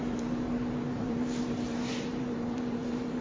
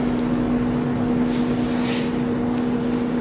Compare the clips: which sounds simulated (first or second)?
first